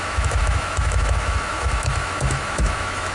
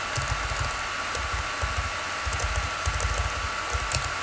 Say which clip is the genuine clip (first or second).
second